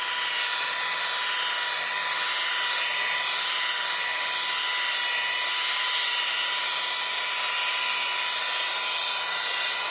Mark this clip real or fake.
real